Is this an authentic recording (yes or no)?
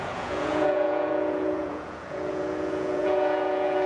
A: no